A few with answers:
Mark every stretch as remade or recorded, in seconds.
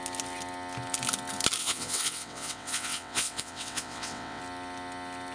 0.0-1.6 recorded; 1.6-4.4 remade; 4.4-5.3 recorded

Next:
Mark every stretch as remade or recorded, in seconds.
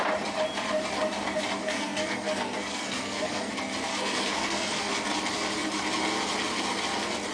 0.0-1.6 recorded; 1.6-3.5 remade; 3.5-3.9 recorded; 3.9-4.9 remade; 4.9-7.3 recorded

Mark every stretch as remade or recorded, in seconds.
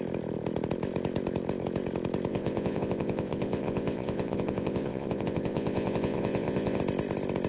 0.0-2.3 recorded; 2.3-6.8 remade; 6.8-7.5 recorded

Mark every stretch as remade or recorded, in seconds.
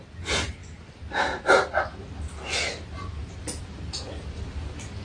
0.0-5.0 recorded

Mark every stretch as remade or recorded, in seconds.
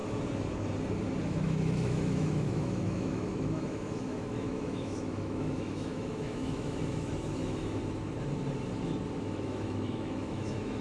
0.0-1.2 recorded; 1.2-7.8 remade; 7.8-9.2 recorded; 9.2-10.8 remade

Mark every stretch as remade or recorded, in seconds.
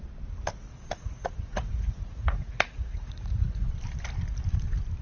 0.0-0.7 recorded; 0.7-3.7 remade; 3.7-5.0 recorded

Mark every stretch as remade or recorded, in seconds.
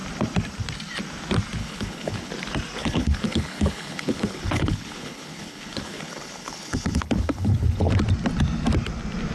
0.0-1.6 recorded; 1.6-2.3 remade; 2.3-2.8 recorded; 2.8-7.9 remade; 7.9-9.3 recorded